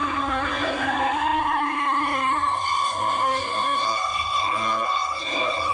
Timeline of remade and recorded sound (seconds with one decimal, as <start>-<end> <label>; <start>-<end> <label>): 0.0-5.7 remade

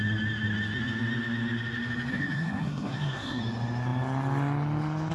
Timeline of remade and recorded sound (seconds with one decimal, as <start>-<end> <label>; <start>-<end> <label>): 0.0-2.1 recorded; 2.1-3.4 remade; 3.4-5.1 recorded

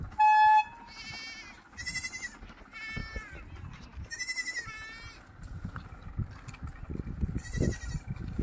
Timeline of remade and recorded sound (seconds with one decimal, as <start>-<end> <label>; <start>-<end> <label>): 0.0-8.4 recorded

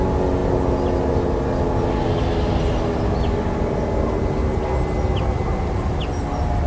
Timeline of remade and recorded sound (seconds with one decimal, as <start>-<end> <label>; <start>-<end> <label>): 0.0-6.7 recorded